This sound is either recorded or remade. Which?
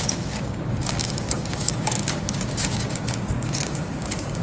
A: remade